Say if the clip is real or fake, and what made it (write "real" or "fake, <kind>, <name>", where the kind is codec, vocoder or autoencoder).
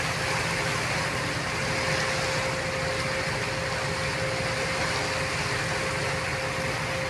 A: real